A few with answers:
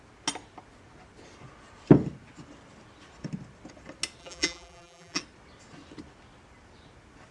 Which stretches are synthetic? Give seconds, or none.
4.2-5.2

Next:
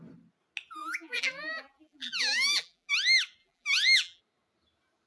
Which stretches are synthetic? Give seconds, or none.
0.8-2.9; 3.4-4.2

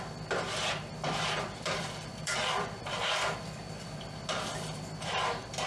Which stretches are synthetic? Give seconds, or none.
0.0-5.7

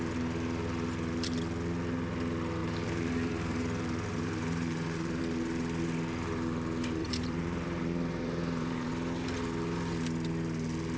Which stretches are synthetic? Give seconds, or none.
2.6-5.2; 7.0-8.9